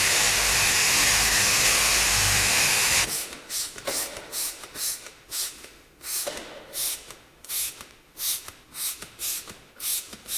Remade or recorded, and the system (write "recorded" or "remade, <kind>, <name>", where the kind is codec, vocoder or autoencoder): remade, autoencoder, DAC-VAE